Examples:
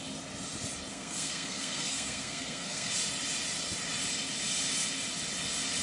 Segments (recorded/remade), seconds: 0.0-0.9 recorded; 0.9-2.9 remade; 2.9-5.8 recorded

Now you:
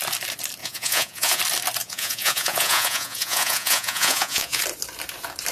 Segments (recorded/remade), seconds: 0.0-0.6 recorded; 0.6-1.4 remade; 1.4-1.8 recorded; 1.8-4.6 remade; 4.6-5.5 recorded

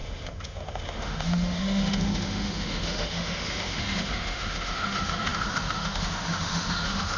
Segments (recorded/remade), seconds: 0.0-7.2 remade